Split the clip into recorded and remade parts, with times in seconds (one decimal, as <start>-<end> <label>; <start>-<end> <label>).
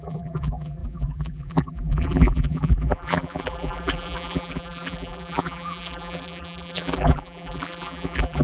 0.0-8.4 remade